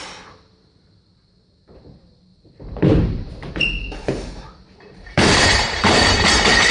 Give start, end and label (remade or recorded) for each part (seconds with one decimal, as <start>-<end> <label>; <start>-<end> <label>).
0.0-2.3 recorded; 2.3-6.3 remade; 6.3-6.7 recorded

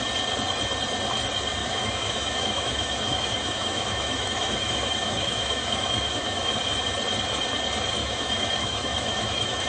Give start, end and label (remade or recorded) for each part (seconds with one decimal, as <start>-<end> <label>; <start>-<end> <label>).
0.0-1.6 recorded; 1.6-6.5 remade; 6.5-8.0 recorded; 8.0-9.7 remade

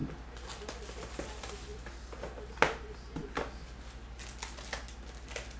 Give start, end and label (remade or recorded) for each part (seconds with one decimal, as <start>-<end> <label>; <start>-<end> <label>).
0.0-5.6 recorded

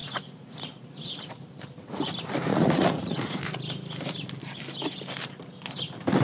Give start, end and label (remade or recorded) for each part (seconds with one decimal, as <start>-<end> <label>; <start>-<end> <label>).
0.0-1.4 remade; 1.4-2.5 recorded; 2.5-3.4 remade; 3.4-6.2 recorded

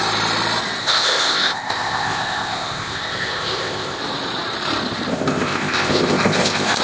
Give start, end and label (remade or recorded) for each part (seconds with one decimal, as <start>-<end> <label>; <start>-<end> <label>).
0.0-0.8 recorded; 0.8-4.0 remade; 4.0-5.1 recorded; 5.1-6.8 remade

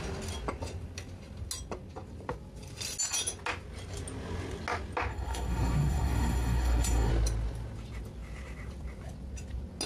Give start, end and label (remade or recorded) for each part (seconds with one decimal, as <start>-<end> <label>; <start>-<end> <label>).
0.0-5.1 recorded; 5.1-7.1 remade; 7.1-9.9 recorded

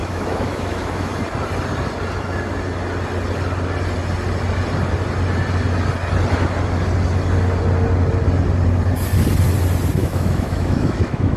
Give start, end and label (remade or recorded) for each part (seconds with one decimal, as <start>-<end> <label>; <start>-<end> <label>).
0.0-1.1 remade; 1.1-10.0 recorded; 10.0-11.4 remade